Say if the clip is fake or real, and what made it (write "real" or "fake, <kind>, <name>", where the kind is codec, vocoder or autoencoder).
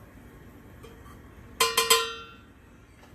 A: real